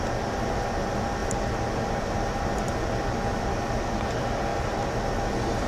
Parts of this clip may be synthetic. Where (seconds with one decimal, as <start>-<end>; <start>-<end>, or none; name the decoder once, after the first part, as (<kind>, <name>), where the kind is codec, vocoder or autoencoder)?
none